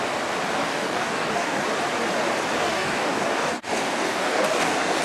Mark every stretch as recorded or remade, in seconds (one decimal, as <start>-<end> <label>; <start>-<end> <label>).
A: 0.0-0.6 recorded; 0.6-1.6 remade; 1.6-2.6 recorded; 2.6-5.0 remade